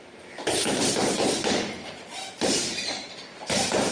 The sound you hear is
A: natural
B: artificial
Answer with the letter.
B